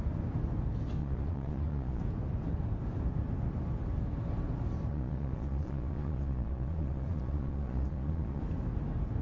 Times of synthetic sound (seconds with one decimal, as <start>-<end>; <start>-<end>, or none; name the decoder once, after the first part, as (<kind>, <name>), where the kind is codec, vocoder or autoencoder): 1.0-2.0 (vocoder, Vocos); 4.9-8.4